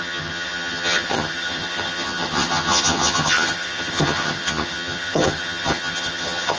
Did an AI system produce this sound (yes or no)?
yes